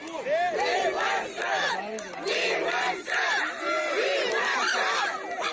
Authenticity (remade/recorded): recorded